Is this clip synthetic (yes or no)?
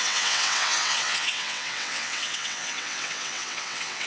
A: yes